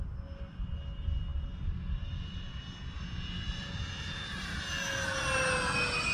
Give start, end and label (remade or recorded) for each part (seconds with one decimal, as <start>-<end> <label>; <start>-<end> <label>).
0.0-6.1 recorded